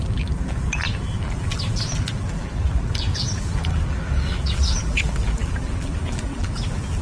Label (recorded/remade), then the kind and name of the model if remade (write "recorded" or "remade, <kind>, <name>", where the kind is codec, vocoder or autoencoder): remade, vocoder, BigVGAN v2